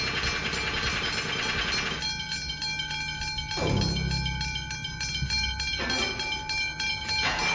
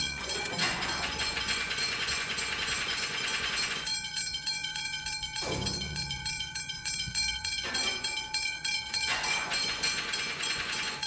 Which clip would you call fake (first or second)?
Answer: second